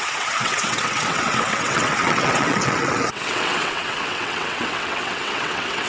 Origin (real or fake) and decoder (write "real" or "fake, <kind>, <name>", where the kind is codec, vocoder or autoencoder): fake, vocoder, WaveNeXt